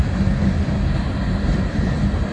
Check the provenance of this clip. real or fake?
real